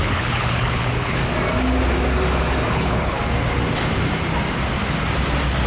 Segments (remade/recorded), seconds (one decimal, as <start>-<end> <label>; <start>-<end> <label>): 0.0-1.2 remade; 1.2-2.7 recorded; 2.7-3.2 remade; 3.2-5.7 recorded